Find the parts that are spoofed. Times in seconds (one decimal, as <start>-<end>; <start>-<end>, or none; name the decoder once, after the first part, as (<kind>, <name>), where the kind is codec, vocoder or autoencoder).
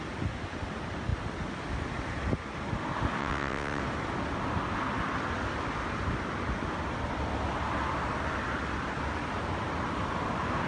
3.2-3.8 (vocoder, WaveNeXt)